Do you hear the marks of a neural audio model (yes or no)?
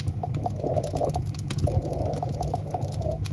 yes